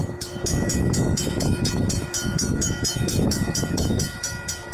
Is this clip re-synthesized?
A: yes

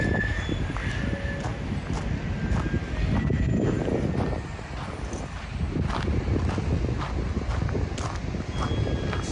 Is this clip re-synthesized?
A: no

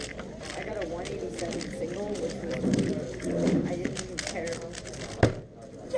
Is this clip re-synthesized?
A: no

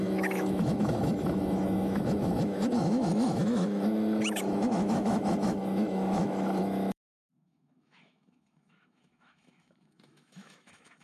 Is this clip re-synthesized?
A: yes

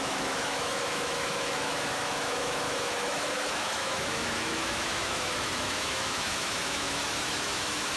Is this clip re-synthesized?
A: yes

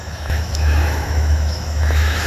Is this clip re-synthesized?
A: yes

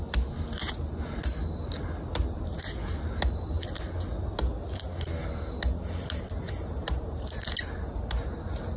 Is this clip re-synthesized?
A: no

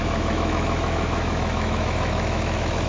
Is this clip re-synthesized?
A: yes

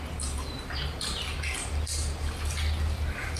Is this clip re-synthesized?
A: no